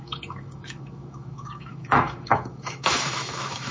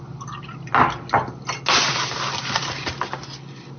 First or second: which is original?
second